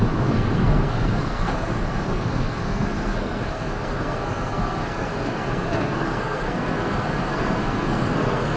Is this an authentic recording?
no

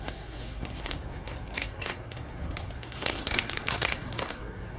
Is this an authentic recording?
no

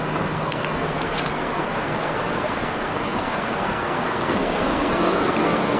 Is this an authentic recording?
no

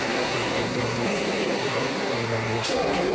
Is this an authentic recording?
no